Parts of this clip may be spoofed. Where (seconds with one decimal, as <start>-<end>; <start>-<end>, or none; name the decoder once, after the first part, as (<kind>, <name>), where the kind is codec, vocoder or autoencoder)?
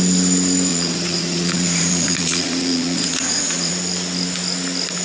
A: 0.7-3.7 (vocoder, Vocos)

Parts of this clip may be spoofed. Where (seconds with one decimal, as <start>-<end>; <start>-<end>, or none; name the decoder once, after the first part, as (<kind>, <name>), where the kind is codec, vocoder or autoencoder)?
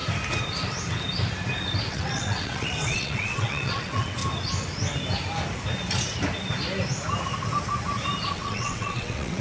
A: 1.9-4.2 (vocoder, WaveNeXt); 8.3-9.4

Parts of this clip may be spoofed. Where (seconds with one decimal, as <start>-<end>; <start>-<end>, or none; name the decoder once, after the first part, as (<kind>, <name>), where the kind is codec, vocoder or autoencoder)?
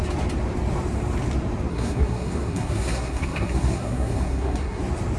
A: 1.7-4.8 (codec, SNAC)